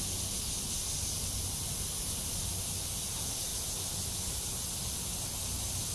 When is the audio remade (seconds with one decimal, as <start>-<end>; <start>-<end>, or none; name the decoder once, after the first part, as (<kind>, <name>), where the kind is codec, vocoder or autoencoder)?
none